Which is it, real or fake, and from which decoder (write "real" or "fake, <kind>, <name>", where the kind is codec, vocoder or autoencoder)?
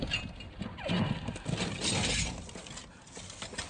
real